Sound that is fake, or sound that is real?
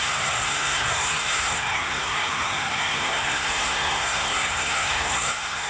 fake